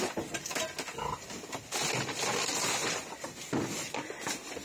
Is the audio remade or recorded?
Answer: recorded